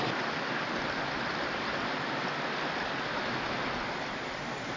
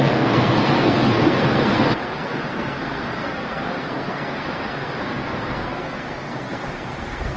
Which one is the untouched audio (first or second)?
first